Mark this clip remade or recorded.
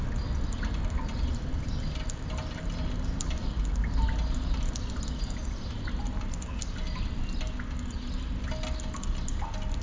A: recorded